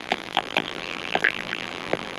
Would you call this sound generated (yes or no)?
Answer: yes